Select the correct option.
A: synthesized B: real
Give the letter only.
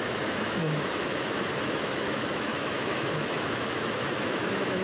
A